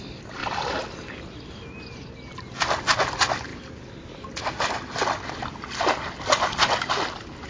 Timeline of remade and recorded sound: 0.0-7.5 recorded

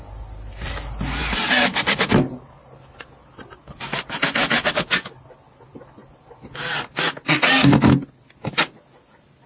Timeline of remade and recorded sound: 0.0-9.5 recorded